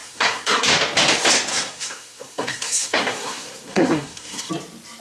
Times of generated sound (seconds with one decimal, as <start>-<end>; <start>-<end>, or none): 0.0-0.7; 1.5-4.5